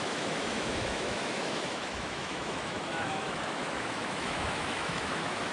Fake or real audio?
fake